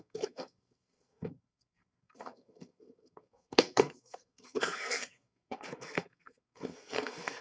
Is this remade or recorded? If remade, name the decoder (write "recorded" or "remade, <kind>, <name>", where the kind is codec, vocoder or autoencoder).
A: remade, codec, SNAC